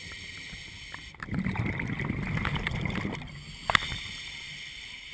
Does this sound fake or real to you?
real